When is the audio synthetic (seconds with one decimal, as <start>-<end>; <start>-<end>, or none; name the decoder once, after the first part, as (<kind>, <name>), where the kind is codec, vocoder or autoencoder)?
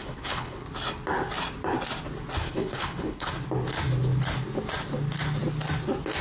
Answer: 0.0-0.7 (codec, HILCodec); 2.4-3.3